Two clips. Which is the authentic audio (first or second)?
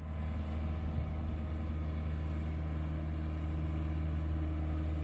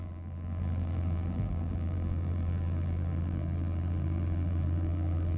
first